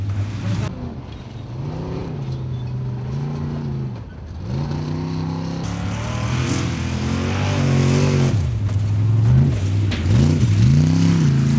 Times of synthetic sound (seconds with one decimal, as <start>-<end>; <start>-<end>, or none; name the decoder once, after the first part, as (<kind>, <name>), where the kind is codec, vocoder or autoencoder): none